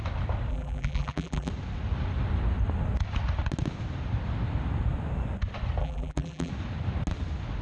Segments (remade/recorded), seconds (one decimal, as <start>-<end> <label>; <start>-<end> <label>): 0.0-0.5 recorded; 0.5-1.5 remade; 1.5-5.8 recorded; 5.8-6.5 remade; 6.5-7.6 recorded

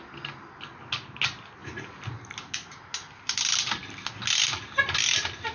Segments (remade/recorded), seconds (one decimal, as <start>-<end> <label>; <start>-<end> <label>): 0.0-5.5 recorded